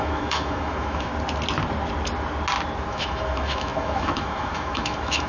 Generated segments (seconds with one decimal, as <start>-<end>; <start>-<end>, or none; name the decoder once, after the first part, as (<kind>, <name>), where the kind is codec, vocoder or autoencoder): 0.0-1.1 (autoencoder, DAC-VAE); 2.9-5.3

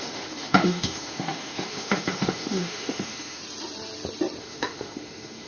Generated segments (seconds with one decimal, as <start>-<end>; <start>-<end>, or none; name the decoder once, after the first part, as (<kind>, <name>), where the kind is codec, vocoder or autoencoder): 0.0-3.4 (autoencoder, DAC-VAE); 4.4-5.5

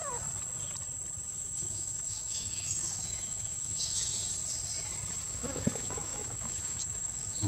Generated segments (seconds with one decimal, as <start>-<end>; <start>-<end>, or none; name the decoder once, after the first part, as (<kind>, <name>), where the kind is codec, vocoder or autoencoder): 1.3-4.2 (autoencoder, DAC-VAE); 5.3-7.5